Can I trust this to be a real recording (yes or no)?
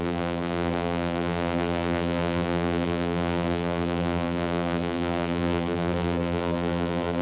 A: no